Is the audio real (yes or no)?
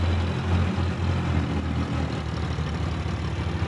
yes